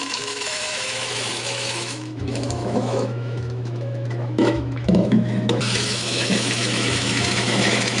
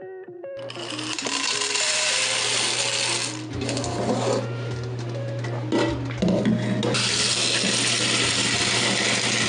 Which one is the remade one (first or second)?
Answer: first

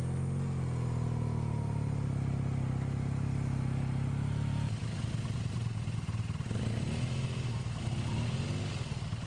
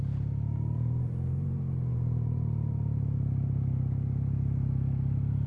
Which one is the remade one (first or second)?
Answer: second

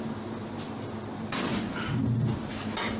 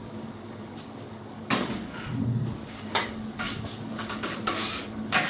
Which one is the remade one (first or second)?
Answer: second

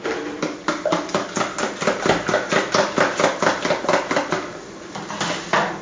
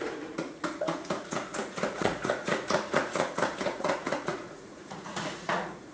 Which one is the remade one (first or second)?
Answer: second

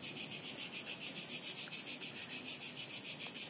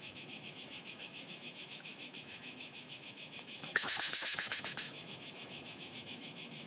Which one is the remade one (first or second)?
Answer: second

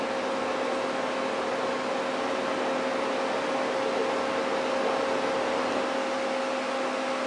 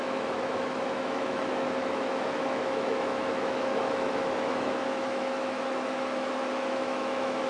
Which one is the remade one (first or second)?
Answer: second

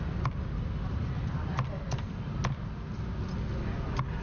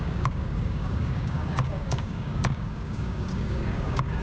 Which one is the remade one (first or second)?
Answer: second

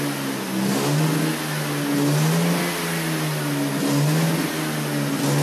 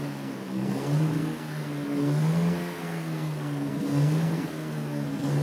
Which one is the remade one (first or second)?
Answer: second